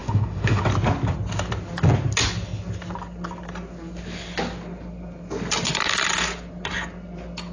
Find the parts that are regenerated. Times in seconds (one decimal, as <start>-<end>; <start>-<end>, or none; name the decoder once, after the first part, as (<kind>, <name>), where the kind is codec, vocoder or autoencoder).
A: 0.0-0.6 (autoencoder, DAC-VAE)

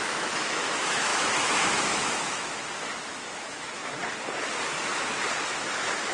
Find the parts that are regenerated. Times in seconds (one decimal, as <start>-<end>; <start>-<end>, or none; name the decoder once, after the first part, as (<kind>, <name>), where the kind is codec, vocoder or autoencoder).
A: 0.0-3.8 (autoencoder, DAC-VAE); 4.5-4.9; 5.6-6.1

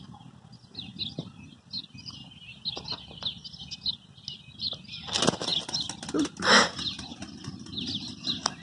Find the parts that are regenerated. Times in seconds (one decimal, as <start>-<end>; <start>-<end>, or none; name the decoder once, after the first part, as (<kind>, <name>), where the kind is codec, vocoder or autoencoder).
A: none

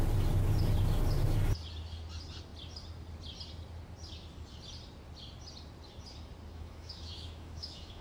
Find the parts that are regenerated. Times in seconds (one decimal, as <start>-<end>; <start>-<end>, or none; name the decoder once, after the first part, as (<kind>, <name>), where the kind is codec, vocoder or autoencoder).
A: 6.5-8.0 (autoencoder, DAC-VAE)

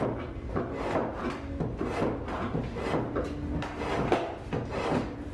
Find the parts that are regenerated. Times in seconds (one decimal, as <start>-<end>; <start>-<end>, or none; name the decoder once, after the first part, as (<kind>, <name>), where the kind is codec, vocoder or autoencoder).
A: none